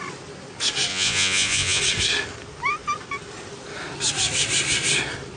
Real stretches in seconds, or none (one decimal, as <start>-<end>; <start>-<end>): 0.0-0.9; 1.8-5.4